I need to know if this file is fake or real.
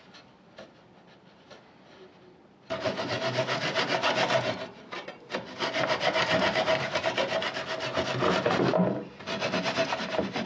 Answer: real